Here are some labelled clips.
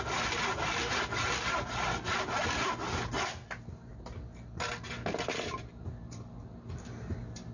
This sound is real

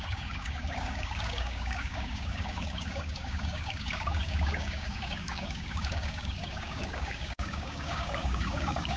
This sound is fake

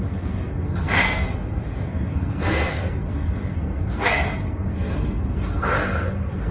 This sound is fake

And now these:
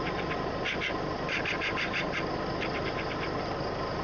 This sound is real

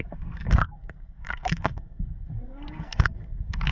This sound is fake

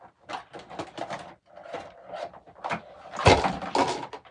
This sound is real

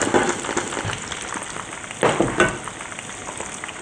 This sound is real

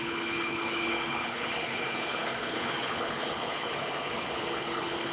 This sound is fake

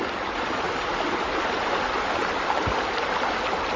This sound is real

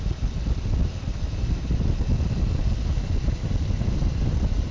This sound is real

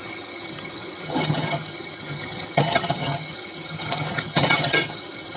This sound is fake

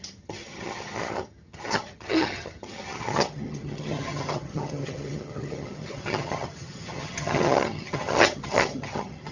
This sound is fake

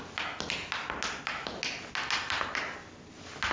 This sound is real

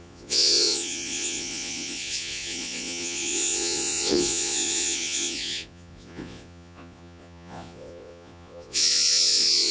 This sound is fake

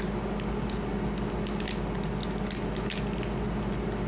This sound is real